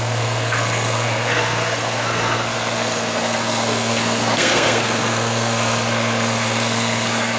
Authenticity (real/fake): fake